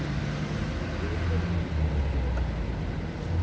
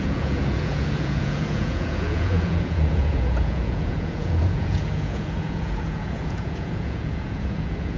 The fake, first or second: second